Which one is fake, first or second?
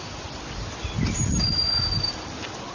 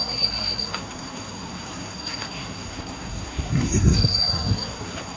second